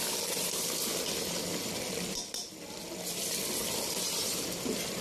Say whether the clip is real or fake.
real